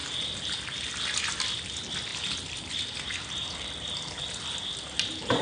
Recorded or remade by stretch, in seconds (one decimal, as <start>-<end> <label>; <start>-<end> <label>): 0.0-5.4 recorded

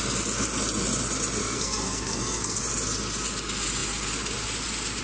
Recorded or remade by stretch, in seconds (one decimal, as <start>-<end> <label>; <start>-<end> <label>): 0.0-1.4 recorded; 1.4-2.6 remade; 2.6-5.0 recorded